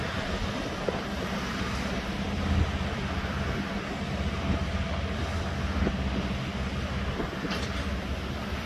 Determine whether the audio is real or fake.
real